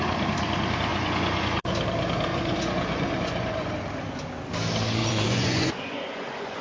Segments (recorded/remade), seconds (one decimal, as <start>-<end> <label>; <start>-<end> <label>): 0.0-0.9 recorded; 0.9-1.7 remade; 1.7-2.3 recorded; 2.3-3.7 remade; 3.7-5.0 recorded; 5.0-6.6 remade